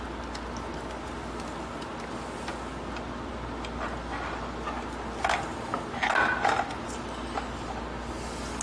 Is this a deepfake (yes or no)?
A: no